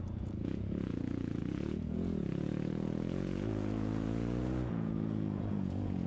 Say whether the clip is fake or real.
fake